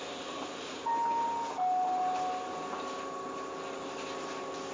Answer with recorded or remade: recorded